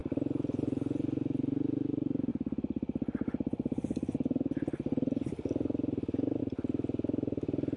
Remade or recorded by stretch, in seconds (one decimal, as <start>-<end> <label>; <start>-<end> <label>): 0.0-7.8 recorded